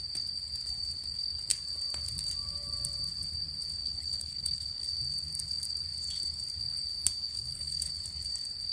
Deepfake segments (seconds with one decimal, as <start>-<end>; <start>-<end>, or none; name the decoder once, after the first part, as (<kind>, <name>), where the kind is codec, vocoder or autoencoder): 3.8-4.9 (codec, HILCodec); 7.2-7.9